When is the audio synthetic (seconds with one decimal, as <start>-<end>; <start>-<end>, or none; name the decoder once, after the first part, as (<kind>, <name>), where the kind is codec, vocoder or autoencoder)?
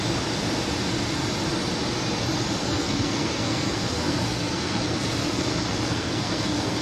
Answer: 2.6-6.8 (codec, SNAC)